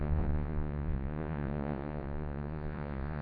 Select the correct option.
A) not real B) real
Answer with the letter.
A